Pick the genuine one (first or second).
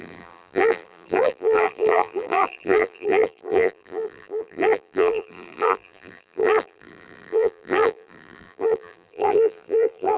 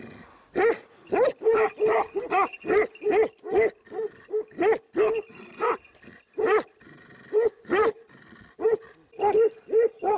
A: second